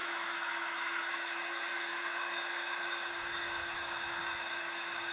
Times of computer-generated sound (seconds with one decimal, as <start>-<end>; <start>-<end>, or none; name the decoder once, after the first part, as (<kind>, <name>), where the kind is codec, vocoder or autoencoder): 0.0-5.1 (autoencoder, DAC-VAE)